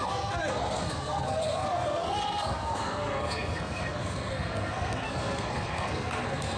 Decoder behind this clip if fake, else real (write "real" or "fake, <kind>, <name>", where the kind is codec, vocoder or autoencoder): fake, codec, SNAC